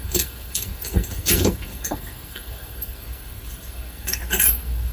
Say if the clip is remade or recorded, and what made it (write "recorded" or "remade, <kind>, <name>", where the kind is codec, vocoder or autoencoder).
remade, codec, SNAC